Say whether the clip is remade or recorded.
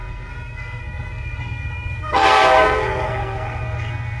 remade